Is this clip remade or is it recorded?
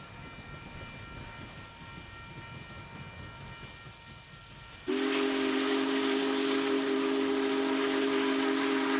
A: recorded